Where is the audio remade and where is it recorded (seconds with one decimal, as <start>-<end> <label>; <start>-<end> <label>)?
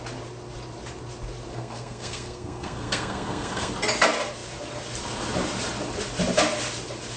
0.0-1.5 recorded; 1.5-3.7 remade; 3.7-7.2 recorded